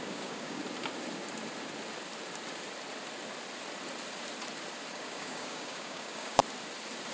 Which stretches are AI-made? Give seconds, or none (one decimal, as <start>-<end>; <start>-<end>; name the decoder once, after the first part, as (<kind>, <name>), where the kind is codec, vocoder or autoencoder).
0.0-0.6 (codec, DAC); 4.9-6.4